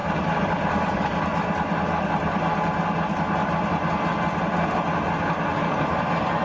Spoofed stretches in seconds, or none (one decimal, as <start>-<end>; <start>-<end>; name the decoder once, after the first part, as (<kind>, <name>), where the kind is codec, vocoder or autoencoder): none